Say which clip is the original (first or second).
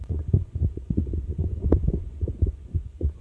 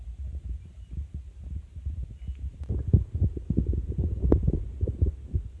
second